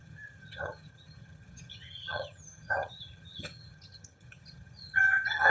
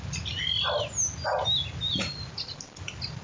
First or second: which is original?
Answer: second